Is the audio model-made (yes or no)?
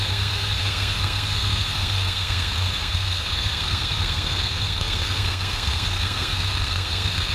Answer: yes